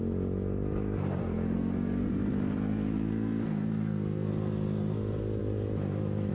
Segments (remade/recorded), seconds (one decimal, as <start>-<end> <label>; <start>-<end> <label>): 0.0-1.2 recorded; 1.2-2.1 remade; 2.1-2.6 recorded; 2.6-4.3 remade; 4.3-6.3 recorded